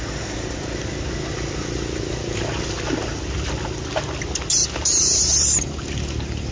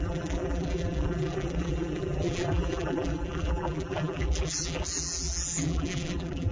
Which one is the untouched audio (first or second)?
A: first